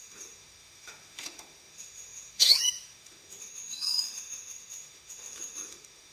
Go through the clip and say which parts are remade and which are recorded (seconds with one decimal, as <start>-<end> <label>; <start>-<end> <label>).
0.0-6.1 remade